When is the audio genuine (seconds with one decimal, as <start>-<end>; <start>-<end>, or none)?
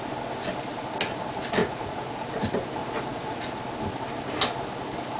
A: 0.0-1.6; 2.2-2.8; 3.4-5.2